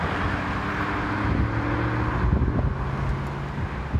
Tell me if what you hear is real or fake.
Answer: real